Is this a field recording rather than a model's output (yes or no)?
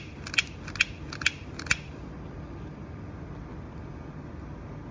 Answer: yes